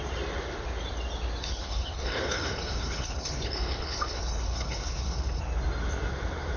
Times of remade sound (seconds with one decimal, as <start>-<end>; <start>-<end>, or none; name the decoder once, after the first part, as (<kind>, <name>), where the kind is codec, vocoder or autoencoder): 1.4-5.4 (codec, HILCodec)